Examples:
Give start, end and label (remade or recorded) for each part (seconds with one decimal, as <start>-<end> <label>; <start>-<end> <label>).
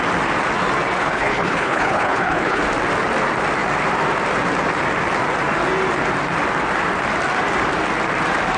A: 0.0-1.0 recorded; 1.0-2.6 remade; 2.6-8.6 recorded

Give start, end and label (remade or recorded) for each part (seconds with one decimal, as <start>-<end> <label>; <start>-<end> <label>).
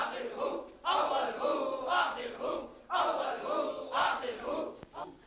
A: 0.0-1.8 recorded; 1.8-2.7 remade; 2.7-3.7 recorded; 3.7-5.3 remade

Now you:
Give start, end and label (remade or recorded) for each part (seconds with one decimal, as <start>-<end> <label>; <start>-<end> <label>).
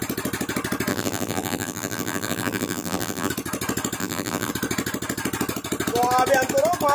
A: 0.0-0.9 recorded; 0.9-3.3 remade; 3.3-4.0 recorded; 4.0-4.5 remade; 4.5-6.9 recorded